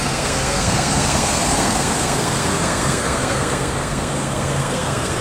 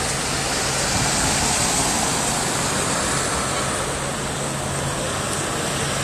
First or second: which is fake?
first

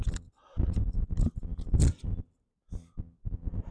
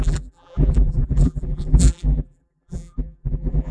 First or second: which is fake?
second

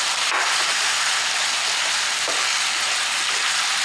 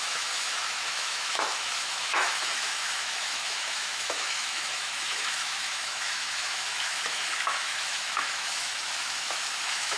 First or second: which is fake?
second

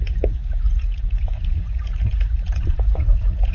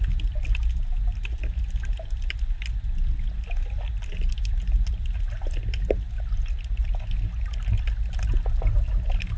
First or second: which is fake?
first